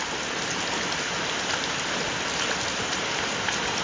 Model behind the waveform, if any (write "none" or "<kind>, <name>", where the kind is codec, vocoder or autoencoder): none